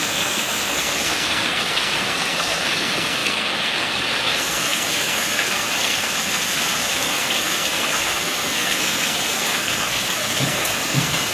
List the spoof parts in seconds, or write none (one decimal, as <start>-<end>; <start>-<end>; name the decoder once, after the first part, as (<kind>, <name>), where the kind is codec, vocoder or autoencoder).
0.0-11.3 (codec, SNAC)